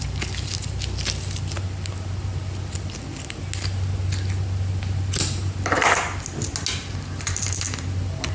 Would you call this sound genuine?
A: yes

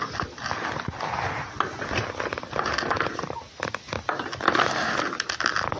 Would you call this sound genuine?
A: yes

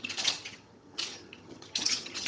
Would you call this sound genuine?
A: no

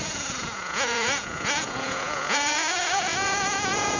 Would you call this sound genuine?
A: no